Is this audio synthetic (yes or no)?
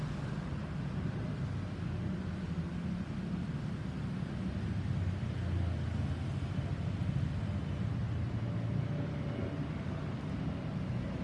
no